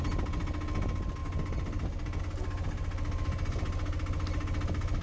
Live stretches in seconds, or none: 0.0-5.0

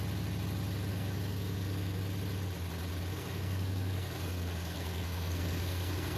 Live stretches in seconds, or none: 0.0-0.9; 2.0-3.1